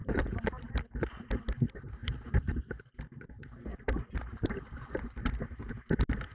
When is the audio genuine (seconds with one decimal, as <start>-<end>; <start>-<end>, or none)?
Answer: 0.8-2.0; 2.6-3.7; 5.3-6.3